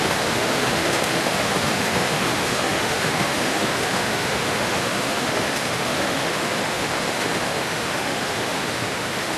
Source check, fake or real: fake